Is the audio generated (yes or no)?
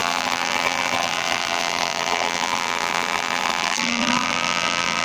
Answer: yes